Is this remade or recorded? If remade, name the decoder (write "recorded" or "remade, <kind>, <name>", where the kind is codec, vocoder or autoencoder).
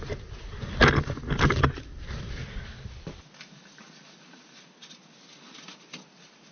recorded